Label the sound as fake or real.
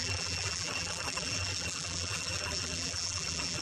fake